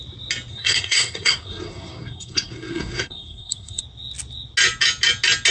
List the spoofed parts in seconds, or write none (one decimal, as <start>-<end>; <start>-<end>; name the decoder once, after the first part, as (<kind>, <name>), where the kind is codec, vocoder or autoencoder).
0.5-3.8 (codec, SNAC)